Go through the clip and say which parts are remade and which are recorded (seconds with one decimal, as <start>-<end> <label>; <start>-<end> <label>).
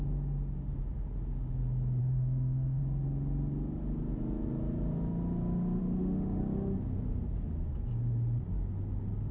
0.0-2.0 recorded; 2.0-2.8 remade; 2.8-5.8 recorded; 5.8-6.4 remade; 6.4-9.3 recorded